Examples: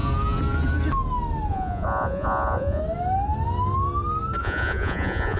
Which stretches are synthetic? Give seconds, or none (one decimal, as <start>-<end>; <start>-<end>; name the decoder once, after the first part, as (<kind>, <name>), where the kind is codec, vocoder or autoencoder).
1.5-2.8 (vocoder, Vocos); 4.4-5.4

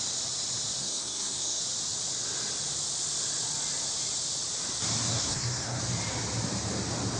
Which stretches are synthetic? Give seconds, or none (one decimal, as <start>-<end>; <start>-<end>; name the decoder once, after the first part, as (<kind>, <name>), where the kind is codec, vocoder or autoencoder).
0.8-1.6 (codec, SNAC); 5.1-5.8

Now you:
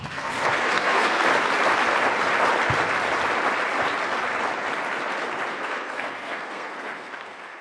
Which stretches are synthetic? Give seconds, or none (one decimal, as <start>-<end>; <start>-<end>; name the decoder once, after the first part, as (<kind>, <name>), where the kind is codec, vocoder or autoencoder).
0.0-1.2 (codec, SNAC); 5.5-7.6

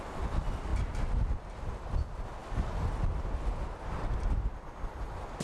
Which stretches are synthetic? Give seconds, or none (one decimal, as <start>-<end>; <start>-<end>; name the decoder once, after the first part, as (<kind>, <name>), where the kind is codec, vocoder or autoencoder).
none

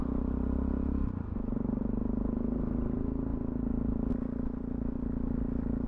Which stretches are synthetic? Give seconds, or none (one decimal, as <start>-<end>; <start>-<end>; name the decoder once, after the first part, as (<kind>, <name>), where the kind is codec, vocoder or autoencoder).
none

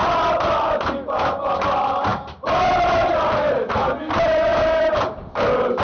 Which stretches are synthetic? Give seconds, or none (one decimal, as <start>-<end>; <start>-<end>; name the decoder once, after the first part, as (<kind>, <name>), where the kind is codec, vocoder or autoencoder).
none

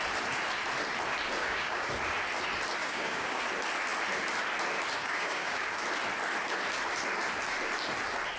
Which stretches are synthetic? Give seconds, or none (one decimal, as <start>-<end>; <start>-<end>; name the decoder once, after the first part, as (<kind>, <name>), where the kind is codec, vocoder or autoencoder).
1.4-1.9 (codec, DAC); 2.8-3.4; 5.0-5.8